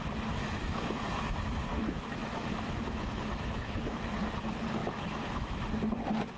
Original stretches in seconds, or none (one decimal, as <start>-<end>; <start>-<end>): 0.0-0.4; 1.0-1.8; 4.1-4.8; 5.6-6.4